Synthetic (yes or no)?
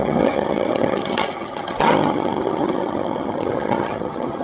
yes